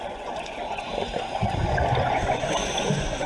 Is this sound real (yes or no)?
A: no